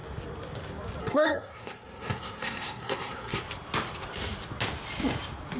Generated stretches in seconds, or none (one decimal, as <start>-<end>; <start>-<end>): 1.0-3.4